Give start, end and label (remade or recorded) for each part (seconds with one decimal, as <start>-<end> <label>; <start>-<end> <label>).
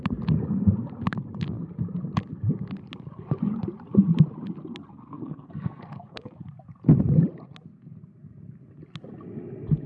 0.0-4.9 recorded; 4.9-6.4 remade; 6.4-9.9 recorded